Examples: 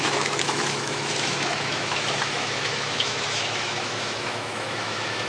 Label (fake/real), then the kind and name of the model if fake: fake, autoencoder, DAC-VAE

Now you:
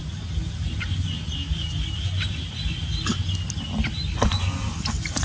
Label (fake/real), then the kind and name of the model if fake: real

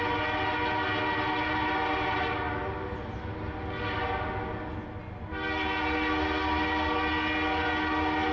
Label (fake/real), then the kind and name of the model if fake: real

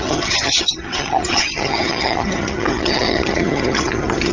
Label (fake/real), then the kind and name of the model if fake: fake, vocoder, HiFi-GAN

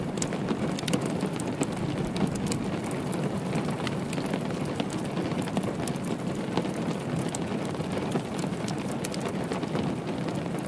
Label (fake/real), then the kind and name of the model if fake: real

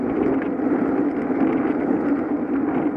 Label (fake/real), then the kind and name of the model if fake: real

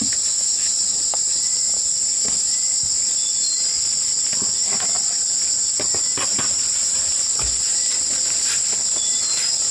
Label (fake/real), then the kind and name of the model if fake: real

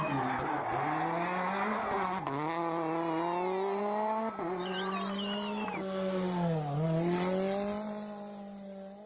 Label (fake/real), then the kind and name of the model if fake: real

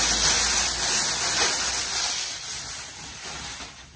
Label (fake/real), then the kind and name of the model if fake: real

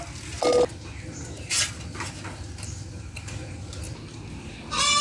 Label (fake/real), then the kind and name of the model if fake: real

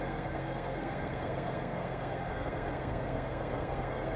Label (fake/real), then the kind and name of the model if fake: fake, codec, SNAC